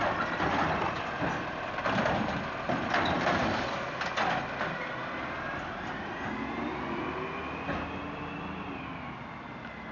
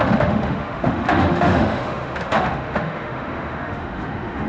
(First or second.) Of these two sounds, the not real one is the second